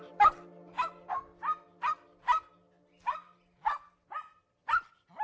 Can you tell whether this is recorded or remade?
recorded